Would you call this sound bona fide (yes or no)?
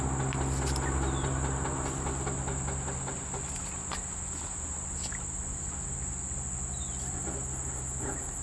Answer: yes